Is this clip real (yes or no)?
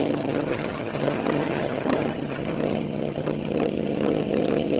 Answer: no